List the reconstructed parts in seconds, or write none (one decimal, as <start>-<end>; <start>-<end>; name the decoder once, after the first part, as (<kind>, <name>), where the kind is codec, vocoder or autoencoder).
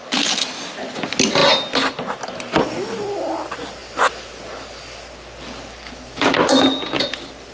none